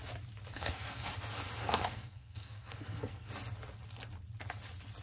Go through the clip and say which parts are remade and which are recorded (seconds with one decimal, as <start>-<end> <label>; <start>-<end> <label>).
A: 0.0-0.5 recorded; 0.5-1.1 remade; 1.1-1.6 recorded; 1.6-3.3 remade; 3.3-5.0 recorded